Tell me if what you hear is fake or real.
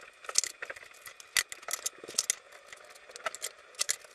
real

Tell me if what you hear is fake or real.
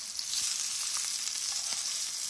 real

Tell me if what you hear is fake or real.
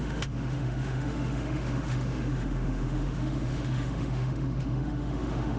fake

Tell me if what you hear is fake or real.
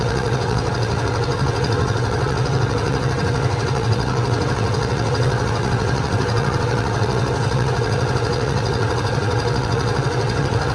fake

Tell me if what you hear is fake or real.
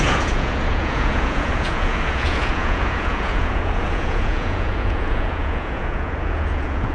fake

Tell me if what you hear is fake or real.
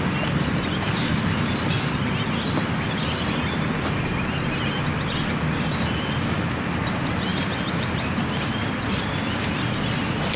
real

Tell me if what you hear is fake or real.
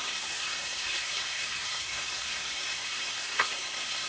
fake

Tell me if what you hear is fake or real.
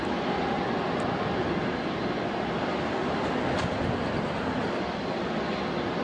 real